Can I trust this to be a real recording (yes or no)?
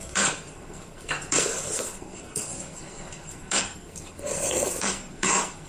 no